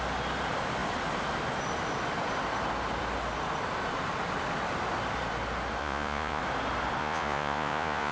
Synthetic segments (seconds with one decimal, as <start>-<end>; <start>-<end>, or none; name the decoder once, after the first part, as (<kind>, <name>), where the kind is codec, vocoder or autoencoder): 5.8-6.4 (vocoder, Vocos); 7.0-8.1